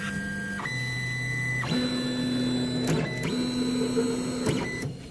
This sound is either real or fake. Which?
real